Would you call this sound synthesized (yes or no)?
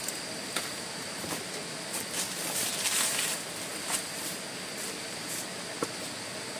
no